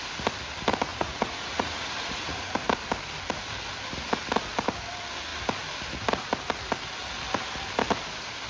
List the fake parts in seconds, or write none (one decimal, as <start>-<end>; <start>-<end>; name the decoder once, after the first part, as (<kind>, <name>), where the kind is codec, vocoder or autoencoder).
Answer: 0.9-2.5 (vocoder, Vocos)